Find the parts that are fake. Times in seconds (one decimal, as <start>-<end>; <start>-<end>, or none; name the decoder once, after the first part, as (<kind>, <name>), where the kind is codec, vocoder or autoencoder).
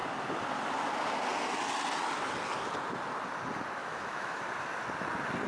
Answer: 3.8-4.4 (autoencoder, DAC-VAE)